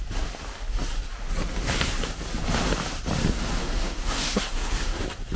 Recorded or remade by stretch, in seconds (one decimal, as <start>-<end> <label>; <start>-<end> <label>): 0.0-3.6 recorded; 3.6-5.0 remade; 5.0-5.4 recorded